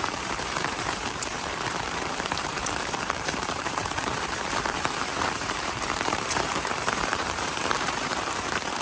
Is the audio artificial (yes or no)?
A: yes